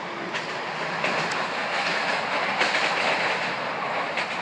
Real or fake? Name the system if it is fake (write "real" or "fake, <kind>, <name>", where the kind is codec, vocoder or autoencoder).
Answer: real